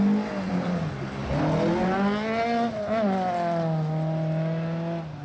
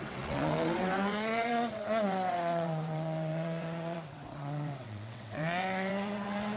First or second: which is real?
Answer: first